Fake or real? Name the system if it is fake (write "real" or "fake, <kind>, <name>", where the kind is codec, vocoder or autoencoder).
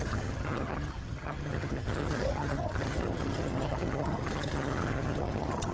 fake, vocoder, HiFi-GAN